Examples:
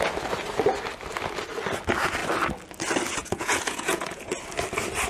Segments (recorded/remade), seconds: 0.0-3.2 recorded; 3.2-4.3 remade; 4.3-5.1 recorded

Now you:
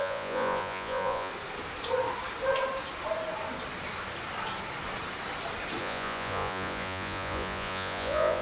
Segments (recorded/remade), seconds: 0.0-1.3 remade; 1.3-5.8 recorded; 5.8-8.4 remade

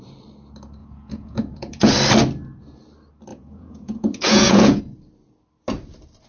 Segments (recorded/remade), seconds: 0.0-0.8 recorded; 0.8-1.9 remade; 1.9-3.3 recorded; 3.3-4.8 remade; 4.8-6.3 recorded

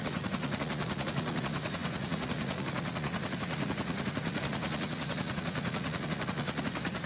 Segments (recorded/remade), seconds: 0.0-7.1 remade

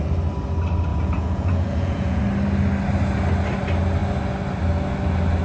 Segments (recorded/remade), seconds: 0.0-0.9 recorded; 0.9-2.2 remade; 2.2-5.4 recorded